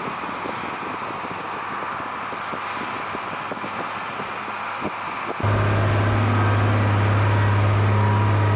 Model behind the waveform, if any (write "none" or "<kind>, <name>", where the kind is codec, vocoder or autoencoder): none